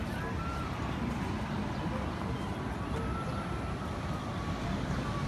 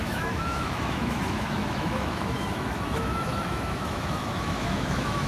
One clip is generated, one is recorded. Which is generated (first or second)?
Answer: second